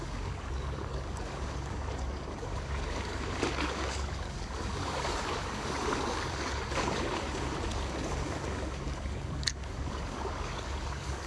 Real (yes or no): no